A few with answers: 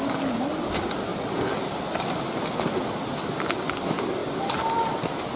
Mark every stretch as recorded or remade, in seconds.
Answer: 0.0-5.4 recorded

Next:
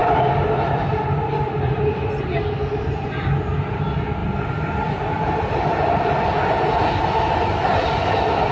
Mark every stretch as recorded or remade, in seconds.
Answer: 0.0-1.4 remade; 1.4-4.2 recorded; 4.2-7.0 remade; 7.0-8.5 recorded